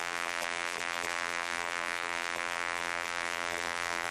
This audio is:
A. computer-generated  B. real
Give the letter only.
A